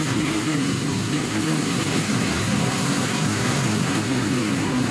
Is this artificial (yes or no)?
yes